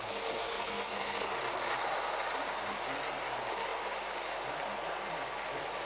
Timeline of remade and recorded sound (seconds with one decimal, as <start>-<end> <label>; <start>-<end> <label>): 0.0-0.4 recorded; 0.4-1.3 remade; 1.3-5.8 recorded